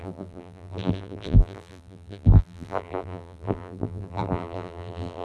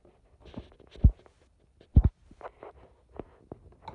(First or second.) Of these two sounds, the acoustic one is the second